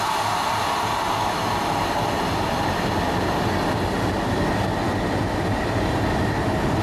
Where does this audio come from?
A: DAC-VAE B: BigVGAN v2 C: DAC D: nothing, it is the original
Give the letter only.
D